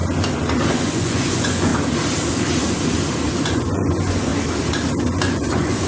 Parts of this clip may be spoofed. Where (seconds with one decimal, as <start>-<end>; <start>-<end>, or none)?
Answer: 0.7-1.7; 3.3-4.3; 5.1-5.9